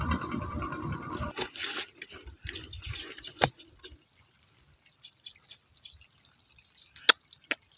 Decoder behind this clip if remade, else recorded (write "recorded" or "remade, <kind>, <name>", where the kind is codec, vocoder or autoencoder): recorded